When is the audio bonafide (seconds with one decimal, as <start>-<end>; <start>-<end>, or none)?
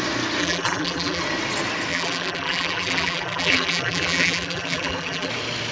0.0-0.4; 1.2-1.9; 5.3-5.7